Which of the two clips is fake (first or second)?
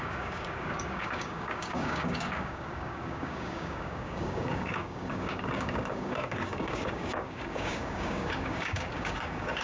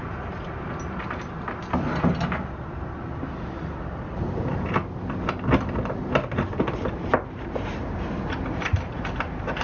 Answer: first